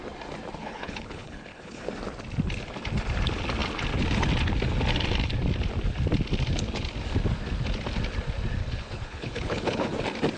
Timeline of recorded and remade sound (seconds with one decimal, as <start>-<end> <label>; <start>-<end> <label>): 0.0-0.6 recorded; 0.6-1.9 remade; 1.9-8.6 recorded; 8.6-9.9 remade; 9.9-10.4 recorded